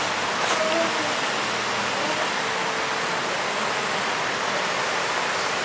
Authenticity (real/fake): real